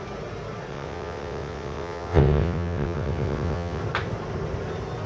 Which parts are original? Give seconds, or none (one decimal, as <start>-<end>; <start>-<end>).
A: 0.0-0.7; 3.8-5.1